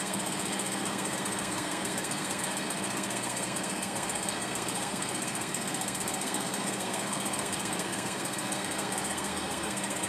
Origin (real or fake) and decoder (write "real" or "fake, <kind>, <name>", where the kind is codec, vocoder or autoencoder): fake, codec, SNAC